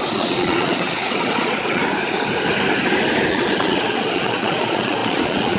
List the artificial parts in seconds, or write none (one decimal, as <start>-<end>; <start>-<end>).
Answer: 0.0-1.8; 3.3-5.6